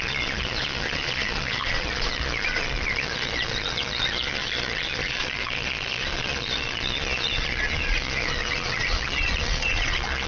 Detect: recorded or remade remade